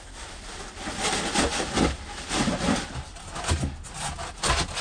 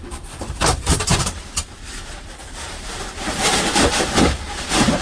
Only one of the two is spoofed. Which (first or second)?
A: second